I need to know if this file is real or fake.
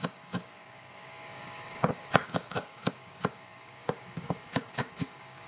fake